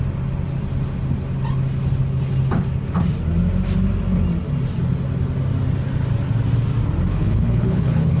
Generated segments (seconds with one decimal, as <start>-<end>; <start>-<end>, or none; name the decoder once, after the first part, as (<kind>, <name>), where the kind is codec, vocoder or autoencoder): 7.1-8.2 (codec, HILCodec)